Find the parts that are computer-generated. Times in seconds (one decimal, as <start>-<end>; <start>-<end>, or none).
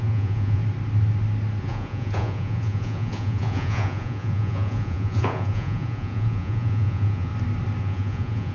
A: 0.0-0.6; 1.6-7.3; 7.8-8.5